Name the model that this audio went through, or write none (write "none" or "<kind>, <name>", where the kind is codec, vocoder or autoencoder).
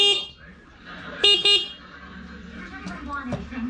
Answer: none